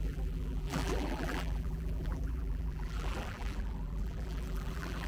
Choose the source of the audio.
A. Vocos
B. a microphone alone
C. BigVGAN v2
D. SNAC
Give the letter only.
C